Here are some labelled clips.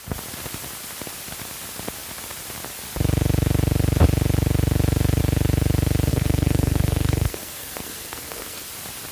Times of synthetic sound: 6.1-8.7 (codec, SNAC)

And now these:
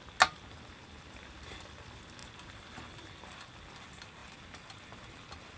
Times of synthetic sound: none